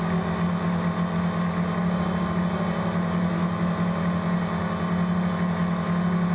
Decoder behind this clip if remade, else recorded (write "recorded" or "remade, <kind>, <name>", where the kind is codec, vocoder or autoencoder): recorded